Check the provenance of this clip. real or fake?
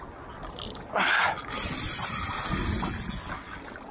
real